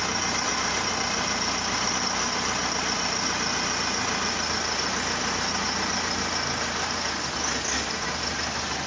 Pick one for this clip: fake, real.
real